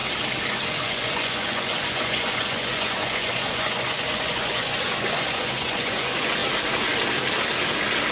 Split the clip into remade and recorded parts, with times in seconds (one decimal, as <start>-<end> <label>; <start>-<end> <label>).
0.0-0.7 recorded; 0.7-6.4 remade; 6.4-8.1 recorded